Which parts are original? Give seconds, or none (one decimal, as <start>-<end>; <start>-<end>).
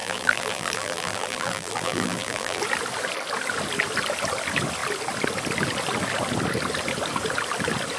2.6-8.0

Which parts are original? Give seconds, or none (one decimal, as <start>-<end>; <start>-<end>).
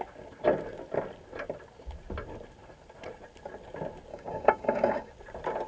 0.0-4.1; 5.1-5.7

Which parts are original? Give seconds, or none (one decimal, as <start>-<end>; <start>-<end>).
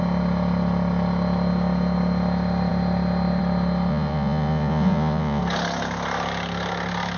0.0-3.9; 5.4-7.2